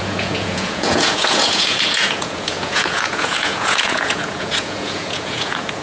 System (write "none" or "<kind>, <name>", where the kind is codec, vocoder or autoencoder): vocoder, Vocos